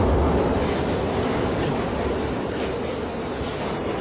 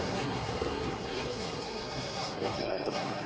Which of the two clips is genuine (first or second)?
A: first